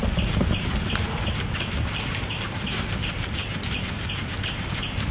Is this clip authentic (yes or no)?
no